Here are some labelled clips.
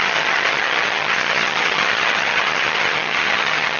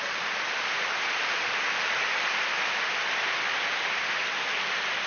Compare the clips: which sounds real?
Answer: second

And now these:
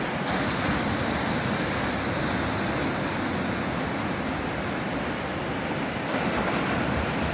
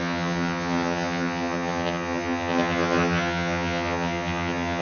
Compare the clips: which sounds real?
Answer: first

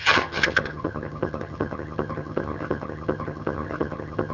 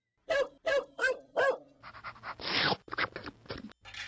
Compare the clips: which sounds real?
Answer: second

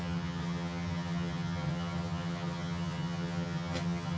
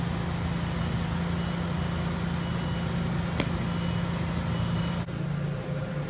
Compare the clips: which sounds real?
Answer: second